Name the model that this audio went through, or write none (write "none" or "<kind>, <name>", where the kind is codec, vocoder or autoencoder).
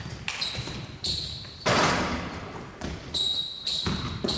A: none